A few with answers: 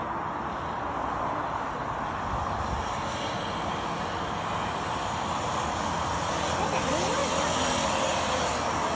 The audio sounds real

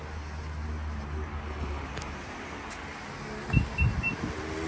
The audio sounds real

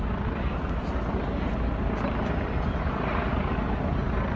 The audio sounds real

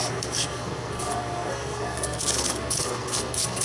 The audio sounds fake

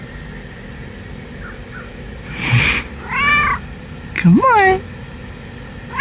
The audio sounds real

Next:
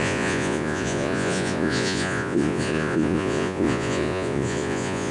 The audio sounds fake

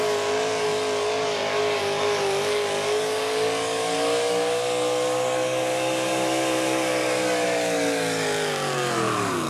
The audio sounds fake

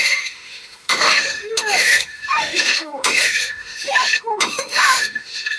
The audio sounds fake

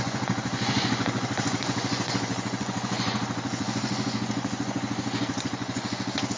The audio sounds fake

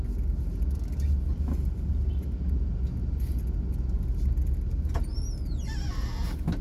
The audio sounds real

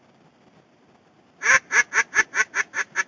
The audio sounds real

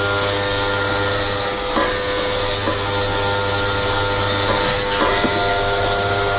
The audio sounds real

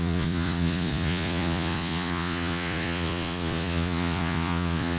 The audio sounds fake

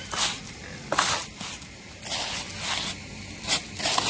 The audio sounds real